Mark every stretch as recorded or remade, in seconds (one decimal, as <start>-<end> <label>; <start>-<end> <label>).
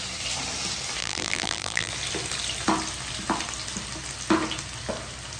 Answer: 0.0-1.0 recorded; 1.0-1.9 remade; 1.9-5.4 recorded